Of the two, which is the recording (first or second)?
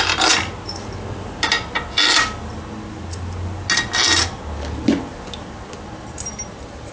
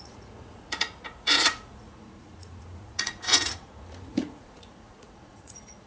first